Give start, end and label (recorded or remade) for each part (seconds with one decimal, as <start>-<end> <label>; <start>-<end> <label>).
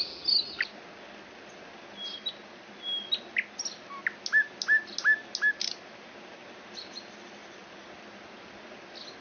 0.0-9.2 recorded